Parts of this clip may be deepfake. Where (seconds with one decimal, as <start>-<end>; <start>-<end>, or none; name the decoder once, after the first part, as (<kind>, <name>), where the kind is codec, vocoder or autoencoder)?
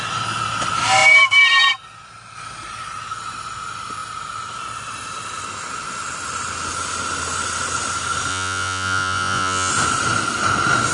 8.3-9.7 (vocoder, Vocos)